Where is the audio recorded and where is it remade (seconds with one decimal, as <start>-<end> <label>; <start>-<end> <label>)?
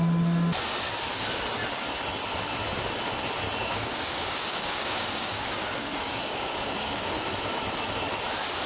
0.0-3.6 recorded; 3.6-7.1 remade; 7.1-8.7 recorded